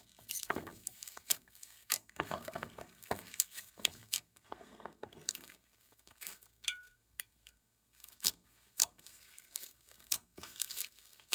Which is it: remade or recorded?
remade